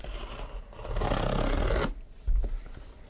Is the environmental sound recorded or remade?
recorded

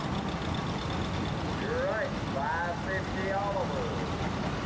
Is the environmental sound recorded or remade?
recorded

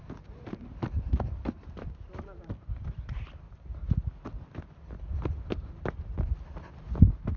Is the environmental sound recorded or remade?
recorded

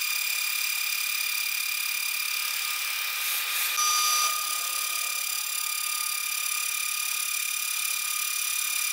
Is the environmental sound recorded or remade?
recorded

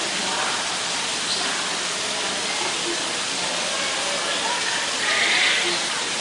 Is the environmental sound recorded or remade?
recorded